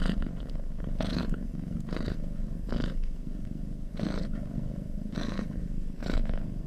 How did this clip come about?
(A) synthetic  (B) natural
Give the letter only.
A